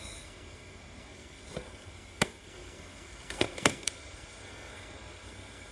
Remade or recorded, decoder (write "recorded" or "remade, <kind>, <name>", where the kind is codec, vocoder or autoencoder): remade, codec, SNAC